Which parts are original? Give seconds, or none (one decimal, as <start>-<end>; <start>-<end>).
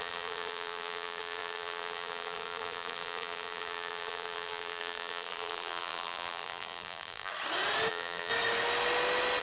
7.3-7.9; 8.3-9.4